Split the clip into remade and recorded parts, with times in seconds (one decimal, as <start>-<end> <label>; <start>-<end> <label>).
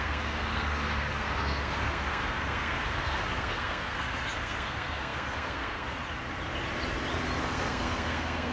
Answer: 0.0-6.0 remade; 6.0-7.4 recorded; 7.4-8.5 remade